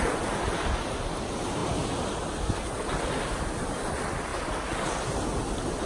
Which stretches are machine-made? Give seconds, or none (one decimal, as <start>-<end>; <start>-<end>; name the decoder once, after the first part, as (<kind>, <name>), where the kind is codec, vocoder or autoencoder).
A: none